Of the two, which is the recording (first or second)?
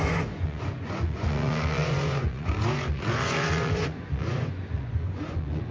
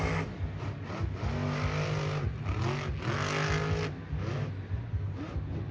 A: second